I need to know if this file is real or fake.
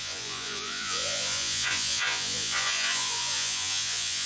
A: fake